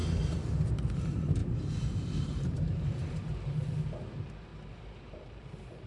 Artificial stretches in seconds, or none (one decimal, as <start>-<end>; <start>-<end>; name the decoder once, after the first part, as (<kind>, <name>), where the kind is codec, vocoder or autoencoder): 1.0-4.5 (vocoder, BigVGAN v2); 5.0-5.9